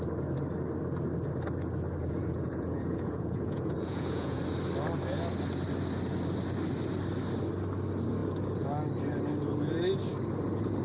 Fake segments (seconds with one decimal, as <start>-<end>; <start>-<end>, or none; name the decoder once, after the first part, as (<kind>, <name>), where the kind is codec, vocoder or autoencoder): 2.0-4.4 (vocoder, Vocos)